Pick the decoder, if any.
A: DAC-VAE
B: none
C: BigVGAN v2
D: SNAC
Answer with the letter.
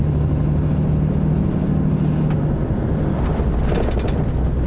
B